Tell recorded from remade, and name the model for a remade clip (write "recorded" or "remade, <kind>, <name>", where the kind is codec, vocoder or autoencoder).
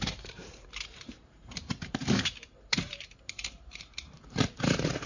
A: remade, vocoder, BigVGAN v2